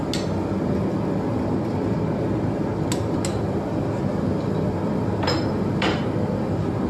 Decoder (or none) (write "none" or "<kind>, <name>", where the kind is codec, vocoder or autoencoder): none